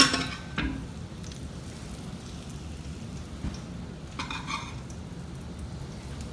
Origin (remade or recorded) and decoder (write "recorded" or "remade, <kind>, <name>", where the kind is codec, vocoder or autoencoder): recorded